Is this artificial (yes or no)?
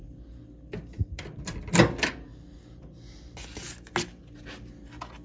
no